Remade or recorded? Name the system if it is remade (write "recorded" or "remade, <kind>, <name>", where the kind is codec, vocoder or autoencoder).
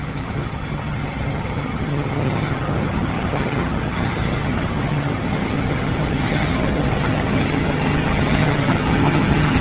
remade, vocoder, HiFi-GAN